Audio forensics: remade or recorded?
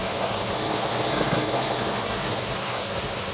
remade